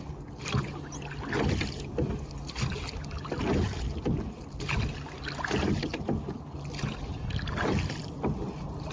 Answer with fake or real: real